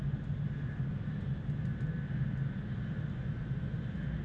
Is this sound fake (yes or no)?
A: no